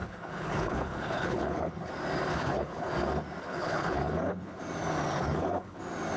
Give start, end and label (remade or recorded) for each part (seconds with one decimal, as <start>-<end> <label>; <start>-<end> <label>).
0.0-1.9 remade; 1.9-2.3 recorded; 2.3-2.9 remade; 2.9-3.4 recorded; 3.4-4.6 remade; 4.6-5.1 recorded; 5.1-5.8 remade; 5.8-6.2 recorded